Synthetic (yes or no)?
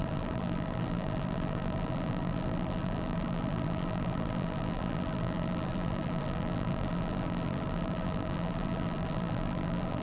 yes